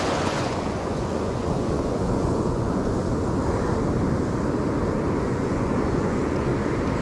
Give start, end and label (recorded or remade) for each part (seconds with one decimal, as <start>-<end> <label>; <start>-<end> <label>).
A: 0.0-3.1 remade; 3.1-5.2 recorded; 5.2-6.5 remade; 6.5-7.0 recorded